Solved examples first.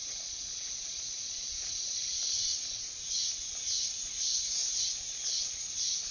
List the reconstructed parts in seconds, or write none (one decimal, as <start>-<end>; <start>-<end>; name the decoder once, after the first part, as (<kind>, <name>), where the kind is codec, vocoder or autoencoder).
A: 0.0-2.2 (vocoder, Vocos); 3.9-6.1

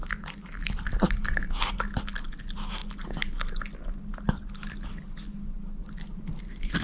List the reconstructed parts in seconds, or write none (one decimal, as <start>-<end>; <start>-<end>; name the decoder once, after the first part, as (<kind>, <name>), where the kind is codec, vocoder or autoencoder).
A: none

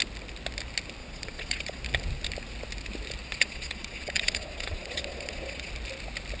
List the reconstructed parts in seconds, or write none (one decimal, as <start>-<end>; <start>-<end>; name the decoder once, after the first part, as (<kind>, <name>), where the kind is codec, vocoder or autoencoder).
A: 1.0-1.8 (vocoder, Vocos); 3.2-5.7

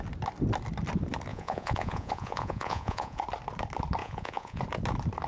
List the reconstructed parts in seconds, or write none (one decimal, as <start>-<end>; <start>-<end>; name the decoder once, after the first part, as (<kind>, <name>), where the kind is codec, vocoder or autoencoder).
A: 1.3-3.2 (vocoder, Vocos); 4.0-4.6

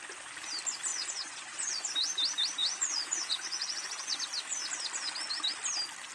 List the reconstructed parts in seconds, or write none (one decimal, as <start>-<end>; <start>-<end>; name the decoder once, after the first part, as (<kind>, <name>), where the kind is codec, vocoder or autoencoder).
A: 0.9-1.9 (vocoder, Vocos); 2.6-4.2

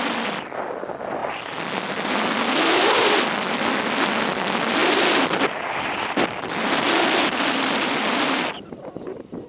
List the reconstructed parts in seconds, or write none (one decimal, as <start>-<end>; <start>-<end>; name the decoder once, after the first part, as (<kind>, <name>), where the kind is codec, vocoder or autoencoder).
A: none